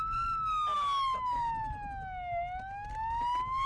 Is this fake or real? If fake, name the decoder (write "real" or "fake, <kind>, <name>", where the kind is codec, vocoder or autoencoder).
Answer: real